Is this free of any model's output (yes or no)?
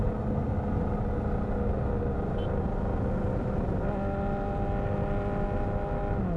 yes